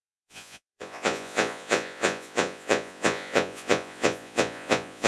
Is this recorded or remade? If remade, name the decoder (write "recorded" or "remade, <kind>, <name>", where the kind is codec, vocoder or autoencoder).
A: remade, vocoder, Vocos